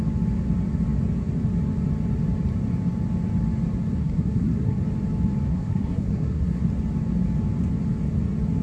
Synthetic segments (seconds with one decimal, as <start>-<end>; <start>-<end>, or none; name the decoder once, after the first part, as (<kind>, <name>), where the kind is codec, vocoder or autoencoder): 4.0-4.8 (codec, SNAC); 5.5-6.6